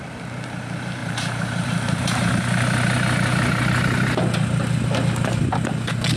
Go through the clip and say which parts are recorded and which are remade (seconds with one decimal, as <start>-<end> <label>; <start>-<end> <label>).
0.0-1.0 recorded; 1.0-2.3 remade; 2.3-6.2 recorded